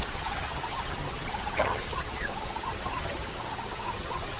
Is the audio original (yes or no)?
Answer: no